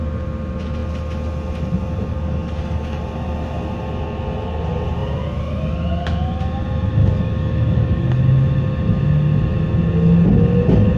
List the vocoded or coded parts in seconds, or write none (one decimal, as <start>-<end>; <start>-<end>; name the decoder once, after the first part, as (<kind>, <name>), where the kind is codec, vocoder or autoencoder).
2.1-3.0 (codec, DAC); 7.0-8.2

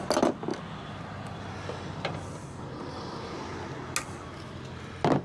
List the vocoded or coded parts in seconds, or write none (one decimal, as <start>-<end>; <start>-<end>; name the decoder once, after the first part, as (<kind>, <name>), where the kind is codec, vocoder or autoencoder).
none

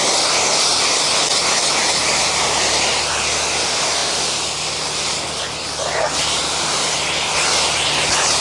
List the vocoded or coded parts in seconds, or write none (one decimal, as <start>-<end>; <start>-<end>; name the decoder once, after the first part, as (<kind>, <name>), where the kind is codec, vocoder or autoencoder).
2.0-3.1 (vocoder, BigVGAN v2)

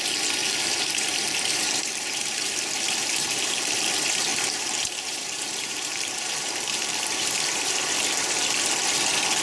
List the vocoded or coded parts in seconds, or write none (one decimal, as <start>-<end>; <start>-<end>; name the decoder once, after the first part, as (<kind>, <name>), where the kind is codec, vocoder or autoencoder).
0.4-2.6 (vocoder, BigVGAN v2); 3.0-3.9; 4.3-7.8

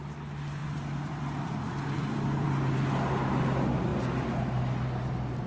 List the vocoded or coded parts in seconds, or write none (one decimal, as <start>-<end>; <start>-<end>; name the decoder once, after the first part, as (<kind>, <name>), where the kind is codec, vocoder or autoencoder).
0.6-2.9 (vocoder, BigVGAN v2)